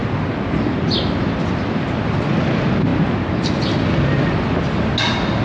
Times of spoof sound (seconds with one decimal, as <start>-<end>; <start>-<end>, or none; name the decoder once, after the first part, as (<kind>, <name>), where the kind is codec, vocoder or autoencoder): none